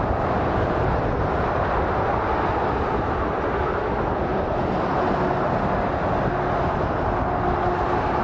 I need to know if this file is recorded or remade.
recorded